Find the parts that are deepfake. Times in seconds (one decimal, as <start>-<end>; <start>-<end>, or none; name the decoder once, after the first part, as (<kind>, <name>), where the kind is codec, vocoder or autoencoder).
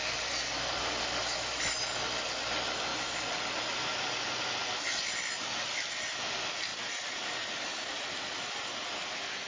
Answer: 0.0-2.4 (vocoder, BigVGAN v2); 6.7-7.7